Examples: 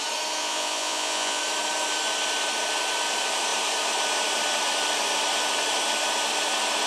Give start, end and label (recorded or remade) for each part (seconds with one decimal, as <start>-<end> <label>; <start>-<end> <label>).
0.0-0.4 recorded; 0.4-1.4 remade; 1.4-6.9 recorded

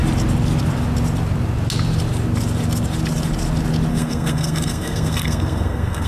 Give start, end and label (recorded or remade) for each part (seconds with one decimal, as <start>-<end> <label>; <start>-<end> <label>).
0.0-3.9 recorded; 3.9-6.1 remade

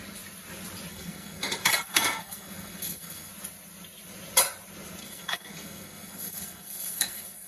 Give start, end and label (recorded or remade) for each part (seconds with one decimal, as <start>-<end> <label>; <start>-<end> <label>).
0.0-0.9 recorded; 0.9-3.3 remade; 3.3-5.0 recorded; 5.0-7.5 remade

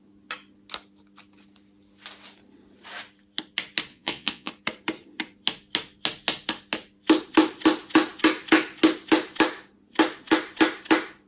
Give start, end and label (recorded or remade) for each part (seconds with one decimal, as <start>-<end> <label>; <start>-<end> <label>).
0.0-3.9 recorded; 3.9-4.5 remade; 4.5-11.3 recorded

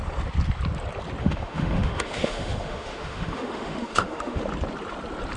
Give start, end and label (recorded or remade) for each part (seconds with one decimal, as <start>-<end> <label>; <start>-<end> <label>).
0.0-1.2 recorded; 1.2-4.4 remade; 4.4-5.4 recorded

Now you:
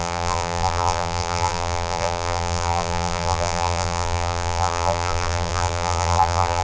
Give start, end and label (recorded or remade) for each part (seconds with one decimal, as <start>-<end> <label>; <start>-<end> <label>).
0.0-6.6 remade

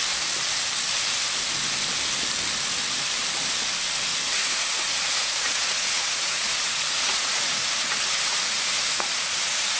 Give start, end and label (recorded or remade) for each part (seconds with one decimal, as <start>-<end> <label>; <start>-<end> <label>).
0.0-4.1 recorded; 4.1-7.9 remade; 7.9-8.3 recorded; 8.3-9.8 remade